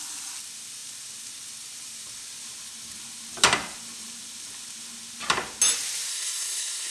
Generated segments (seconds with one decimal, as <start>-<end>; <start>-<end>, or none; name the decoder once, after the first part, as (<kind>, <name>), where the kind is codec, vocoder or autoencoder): 6.1-6.9 (codec, SNAC)